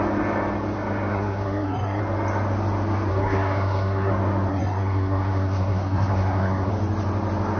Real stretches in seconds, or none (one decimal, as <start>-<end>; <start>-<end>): 0.0-1.1; 2.0-3.1; 4.1-4.5; 6.7-7.6